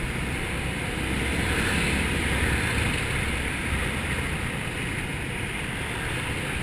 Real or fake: fake